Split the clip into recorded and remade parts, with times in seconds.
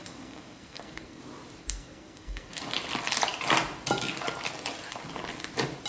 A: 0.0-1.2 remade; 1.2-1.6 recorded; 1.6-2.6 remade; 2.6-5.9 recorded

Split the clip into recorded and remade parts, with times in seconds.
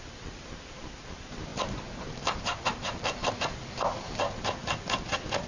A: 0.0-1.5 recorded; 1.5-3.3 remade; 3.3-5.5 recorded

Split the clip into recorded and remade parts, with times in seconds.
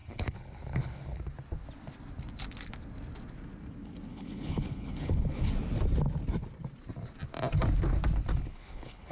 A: 0.0-1.2 remade; 1.2-4.1 recorded; 4.1-5.5 remade; 5.5-8.3 recorded; 8.3-9.1 remade